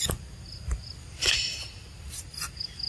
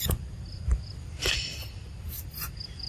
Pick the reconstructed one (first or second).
second